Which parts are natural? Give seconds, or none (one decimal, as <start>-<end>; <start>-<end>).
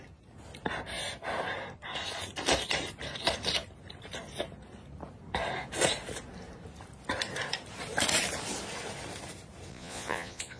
0.0-9.7